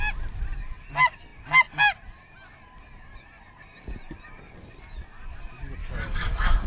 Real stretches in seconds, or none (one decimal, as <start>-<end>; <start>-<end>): 0.0-5.8

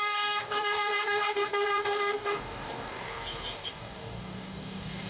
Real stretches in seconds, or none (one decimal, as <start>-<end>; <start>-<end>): none

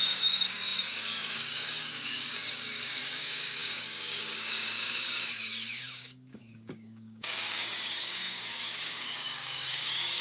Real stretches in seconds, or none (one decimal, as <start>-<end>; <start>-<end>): none